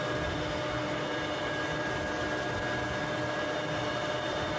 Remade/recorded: recorded